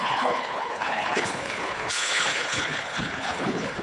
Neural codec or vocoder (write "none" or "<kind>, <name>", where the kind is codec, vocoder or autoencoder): codec, HILCodec